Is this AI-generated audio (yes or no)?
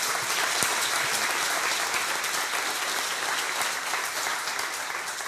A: no